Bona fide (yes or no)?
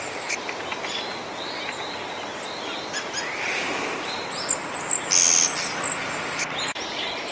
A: yes